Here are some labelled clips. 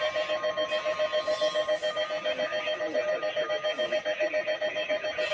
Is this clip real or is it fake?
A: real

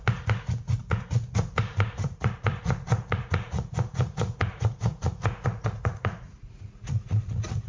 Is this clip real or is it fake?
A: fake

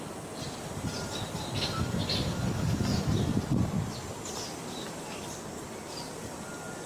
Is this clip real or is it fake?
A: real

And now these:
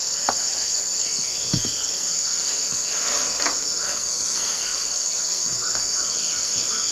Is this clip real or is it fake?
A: fake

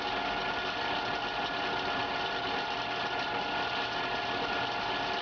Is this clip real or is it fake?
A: real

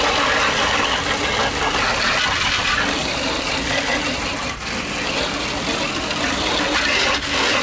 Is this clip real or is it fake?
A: real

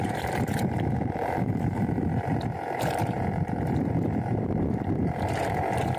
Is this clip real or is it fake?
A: fake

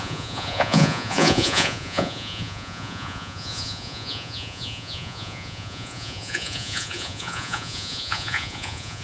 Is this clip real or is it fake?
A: fake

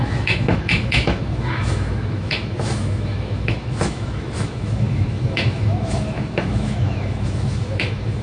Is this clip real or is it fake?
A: fake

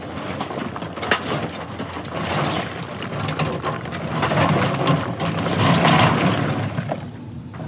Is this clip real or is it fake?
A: real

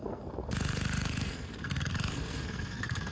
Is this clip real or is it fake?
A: fake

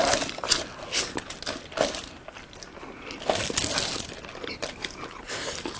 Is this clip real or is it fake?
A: real